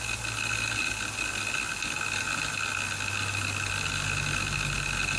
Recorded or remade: recorded